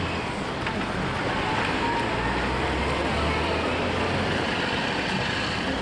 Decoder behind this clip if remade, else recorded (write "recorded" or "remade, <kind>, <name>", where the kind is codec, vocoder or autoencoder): recorded